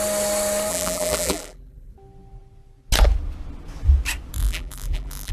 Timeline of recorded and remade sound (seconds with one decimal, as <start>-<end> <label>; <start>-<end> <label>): 0.0-0.7 recorded; 0.7-1.9 remade; 1.9-4.4 recorded; 4.4-5.3 remade